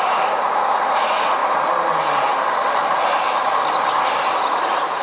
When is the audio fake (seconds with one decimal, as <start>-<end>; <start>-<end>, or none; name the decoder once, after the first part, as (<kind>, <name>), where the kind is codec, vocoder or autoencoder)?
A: 0.0-1.4 (vocoder, Vocos); 4.4-5.0